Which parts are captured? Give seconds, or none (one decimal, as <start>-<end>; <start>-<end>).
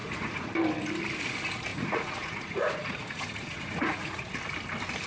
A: 0.5-1.7; 4.3-5.1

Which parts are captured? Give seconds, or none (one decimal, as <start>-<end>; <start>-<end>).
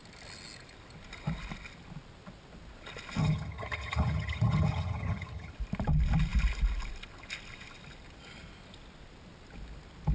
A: 0.0-3.2; 5.5-10.1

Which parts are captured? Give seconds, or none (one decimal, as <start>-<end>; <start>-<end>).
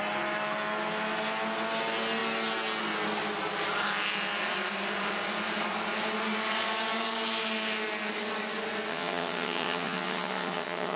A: 0.0-8.9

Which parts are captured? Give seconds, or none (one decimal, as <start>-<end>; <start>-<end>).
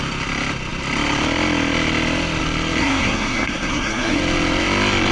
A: 0.0-2.8; 4.2-5.1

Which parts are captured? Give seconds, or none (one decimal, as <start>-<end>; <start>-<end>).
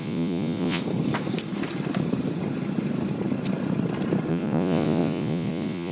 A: 0.8-4.3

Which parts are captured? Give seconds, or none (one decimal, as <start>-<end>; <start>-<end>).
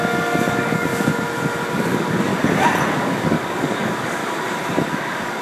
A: 1.1-1.7; 2.3-2.9; 4.2-4.8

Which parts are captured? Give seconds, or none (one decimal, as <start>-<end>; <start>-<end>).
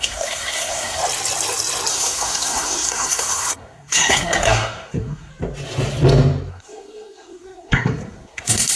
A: 1.0-1.9; 5.3-6.5